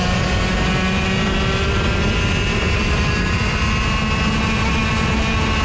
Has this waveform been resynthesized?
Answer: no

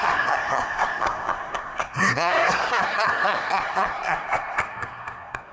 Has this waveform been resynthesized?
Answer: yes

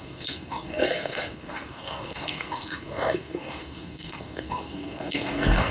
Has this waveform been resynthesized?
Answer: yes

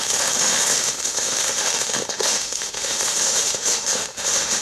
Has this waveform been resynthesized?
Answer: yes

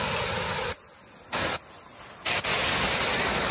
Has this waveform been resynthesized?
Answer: no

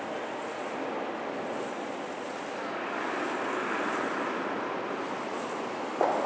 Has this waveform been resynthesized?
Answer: no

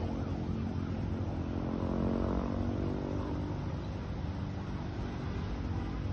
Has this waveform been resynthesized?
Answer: no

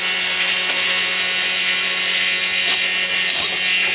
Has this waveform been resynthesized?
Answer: no